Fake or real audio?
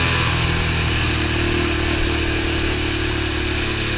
real